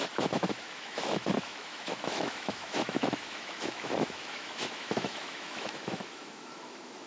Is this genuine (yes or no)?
no